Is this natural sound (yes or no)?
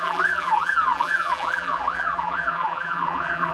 no